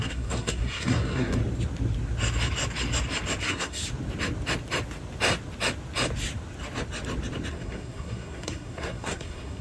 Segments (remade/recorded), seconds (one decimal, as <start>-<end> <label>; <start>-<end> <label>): 0.0-1.4 remade; 1.4-3.4 recorded; 3.4-3.8 remade; 3.8-7.5 recorded; 7.5-9.6 remade

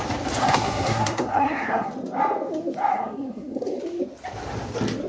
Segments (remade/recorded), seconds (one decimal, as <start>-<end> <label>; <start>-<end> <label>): 0.0-0.4 recorded; 0.4-1.9 remade; 1.9-2.9 recorded; 2.9-3.8 remade; 3.8-5.1 recorded

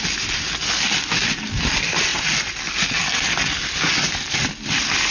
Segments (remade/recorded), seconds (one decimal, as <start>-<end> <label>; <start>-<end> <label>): 0.0-5.1 recorded